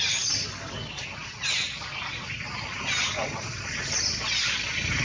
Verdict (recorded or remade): recorded